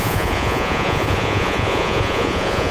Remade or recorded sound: remade